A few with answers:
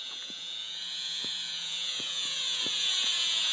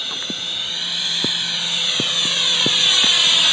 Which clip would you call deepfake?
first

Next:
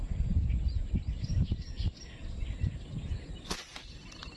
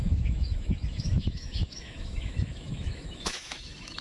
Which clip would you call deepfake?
second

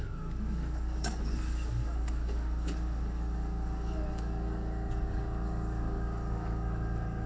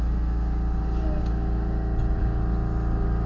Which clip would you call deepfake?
first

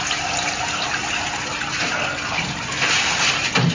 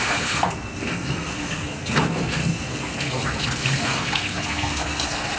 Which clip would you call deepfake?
second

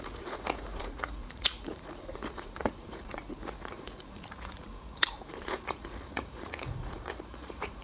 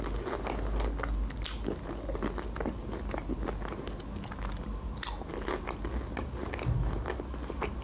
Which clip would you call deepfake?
first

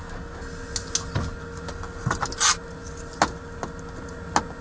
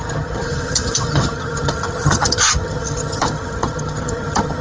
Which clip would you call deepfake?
second